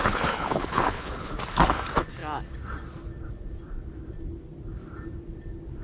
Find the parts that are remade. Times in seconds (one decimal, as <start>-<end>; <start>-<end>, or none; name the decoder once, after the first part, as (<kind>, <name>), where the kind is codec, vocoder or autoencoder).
0.0-1.3 (codec, HILCodec)